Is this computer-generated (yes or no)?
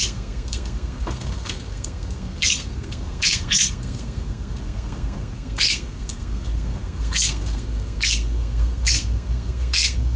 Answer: yes